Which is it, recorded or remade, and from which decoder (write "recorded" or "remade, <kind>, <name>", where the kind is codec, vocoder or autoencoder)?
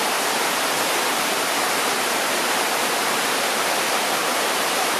remade, vocoder, BigVGAN v2